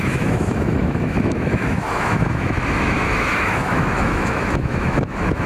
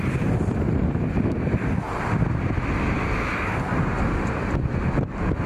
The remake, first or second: first